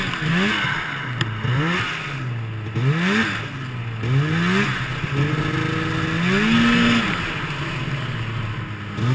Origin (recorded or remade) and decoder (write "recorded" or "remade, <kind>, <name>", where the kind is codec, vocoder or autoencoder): recorded